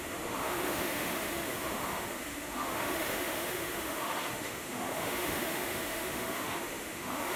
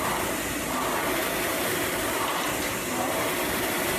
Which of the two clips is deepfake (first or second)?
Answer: first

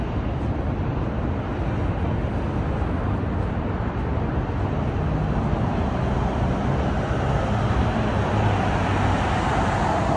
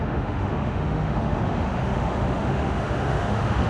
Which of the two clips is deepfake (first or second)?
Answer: second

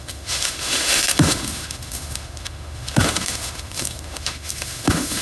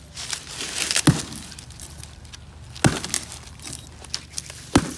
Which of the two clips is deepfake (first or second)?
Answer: first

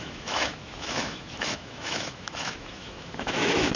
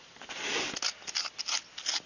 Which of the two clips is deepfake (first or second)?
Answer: first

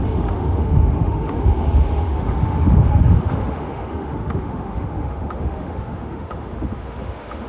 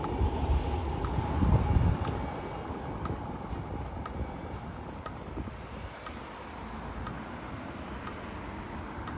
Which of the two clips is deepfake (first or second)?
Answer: first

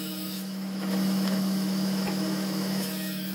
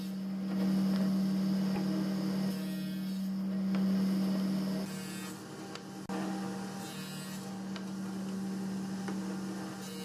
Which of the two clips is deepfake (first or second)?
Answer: first